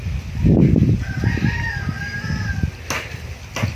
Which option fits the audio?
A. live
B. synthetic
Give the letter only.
A